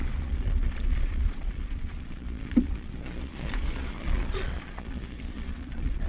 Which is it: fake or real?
fake